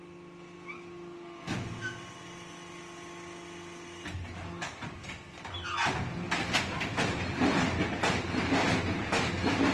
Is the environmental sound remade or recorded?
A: recorded